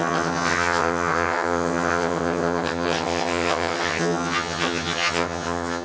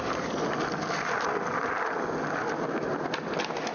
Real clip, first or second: second